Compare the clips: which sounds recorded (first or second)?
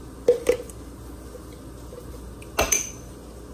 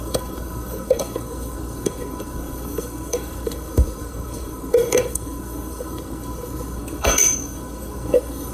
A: first